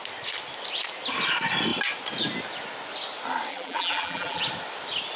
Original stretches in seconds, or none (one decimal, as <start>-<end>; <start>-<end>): 0.0-3.5; 4.4-5.2